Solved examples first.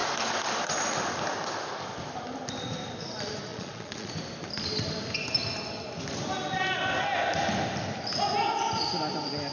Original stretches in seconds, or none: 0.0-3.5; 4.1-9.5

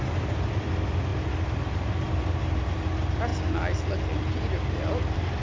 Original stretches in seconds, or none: 0.0-5.4

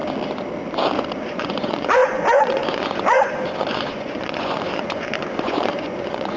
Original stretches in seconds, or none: 0.0-1.3

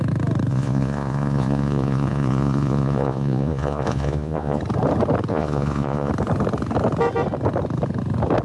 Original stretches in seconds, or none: 0.0-0.5; 4.6-5.3; 6.1-8.4

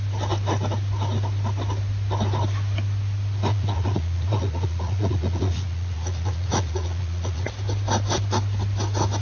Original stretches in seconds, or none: 0.0-3.5; 7.5-9.2

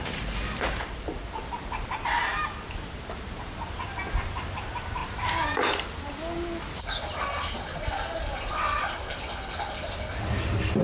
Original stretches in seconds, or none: 0.0-10.8

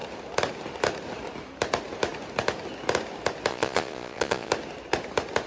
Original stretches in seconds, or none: 0.0-3.5; 4.5-5.5

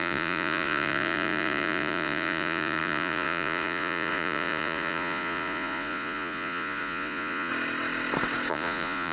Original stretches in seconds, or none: 7.5-8.5